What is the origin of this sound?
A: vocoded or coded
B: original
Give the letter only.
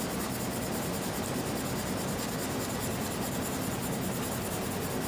B